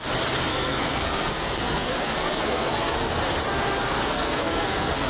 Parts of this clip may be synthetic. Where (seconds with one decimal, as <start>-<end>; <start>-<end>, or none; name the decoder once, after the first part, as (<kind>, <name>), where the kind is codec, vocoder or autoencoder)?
0.5-3.2 (codec, SNAC); 3.9-5.1